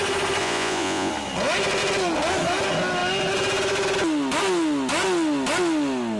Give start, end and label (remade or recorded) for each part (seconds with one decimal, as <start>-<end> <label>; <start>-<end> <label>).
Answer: 0.0-0.4 recorded; 0.4-1.1 remade; 1.1-6.2 recorded